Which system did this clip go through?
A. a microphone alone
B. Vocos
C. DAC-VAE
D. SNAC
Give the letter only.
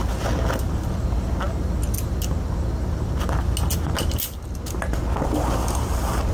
A